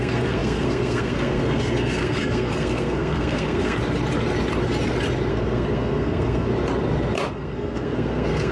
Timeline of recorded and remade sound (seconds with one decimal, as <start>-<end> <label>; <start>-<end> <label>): 0.0-3.8 remade; 3.8-5.3 recorded; 5.3-6.5 remade; 6.5-7.3 recorded; 7.3-8.5 remade